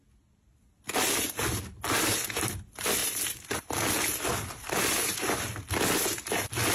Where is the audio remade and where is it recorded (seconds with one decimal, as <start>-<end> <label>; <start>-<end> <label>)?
0.0-3.0 recorded; 3.0-3.9 remade; 3.9-6.7 recorded